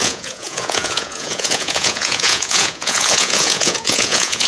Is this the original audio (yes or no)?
no